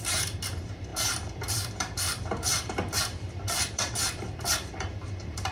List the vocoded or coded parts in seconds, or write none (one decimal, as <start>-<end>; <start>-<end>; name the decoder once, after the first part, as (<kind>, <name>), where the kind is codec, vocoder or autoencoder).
0.0-5.5 (vocoder, BigVGAN v2)